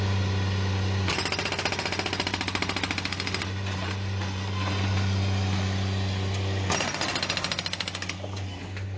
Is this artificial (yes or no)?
no